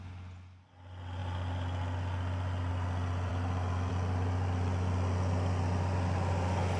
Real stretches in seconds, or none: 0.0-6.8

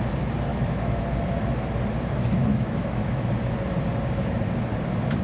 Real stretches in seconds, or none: 0.0-0.5; 1.0-2.5; 3.3-5.2